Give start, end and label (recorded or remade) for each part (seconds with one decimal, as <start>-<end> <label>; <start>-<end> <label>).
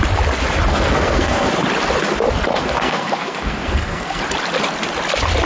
0.0-0.7 recorded; 0.7-1.5 remade; 1.5-2.5 recorded; 2.5-4.2 remade; 4.2-5.5 recorded